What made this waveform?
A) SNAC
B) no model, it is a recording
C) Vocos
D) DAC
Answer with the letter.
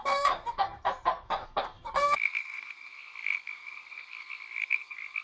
A